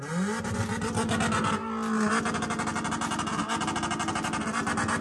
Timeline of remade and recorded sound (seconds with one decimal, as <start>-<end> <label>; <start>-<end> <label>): 0.0-5.0 recorded